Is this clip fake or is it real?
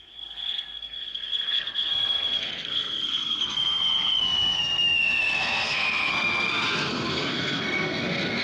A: fake